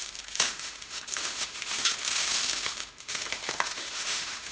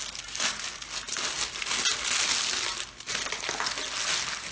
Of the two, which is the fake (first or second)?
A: first